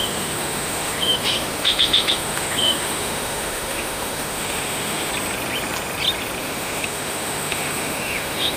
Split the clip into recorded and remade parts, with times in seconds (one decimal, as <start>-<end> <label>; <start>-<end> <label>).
0.0-5.1 remade; 5.1-6.4 recorded; 6.4-8.6 remade